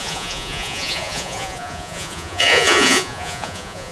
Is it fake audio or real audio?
fake